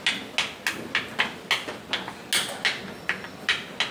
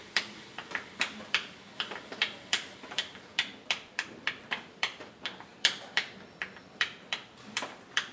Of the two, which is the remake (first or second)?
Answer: second